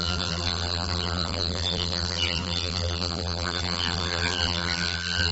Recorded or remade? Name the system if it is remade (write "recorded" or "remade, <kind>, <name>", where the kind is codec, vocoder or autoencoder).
remade, vocoder, BigVGAN v2